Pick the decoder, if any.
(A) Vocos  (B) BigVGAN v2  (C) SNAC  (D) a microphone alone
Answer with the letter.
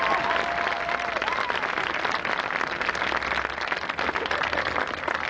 D